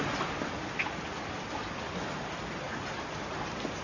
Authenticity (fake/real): real